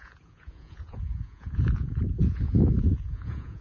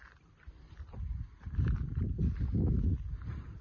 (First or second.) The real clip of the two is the second